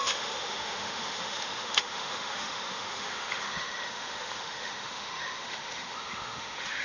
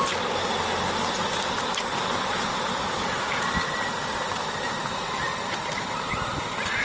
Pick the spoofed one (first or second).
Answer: first